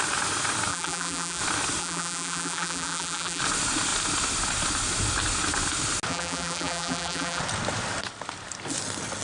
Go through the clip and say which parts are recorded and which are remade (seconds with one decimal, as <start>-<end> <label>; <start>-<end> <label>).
0.0-0.7 recorded; 0.7-1.4 remade; 1.4-1.8 recorded; 1.8-3.4 remade; 3.4-6.1 recorded; 6.1-7.4 remade; 7.4-9.2 recorded